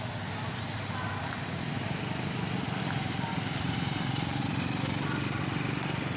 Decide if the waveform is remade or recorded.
remade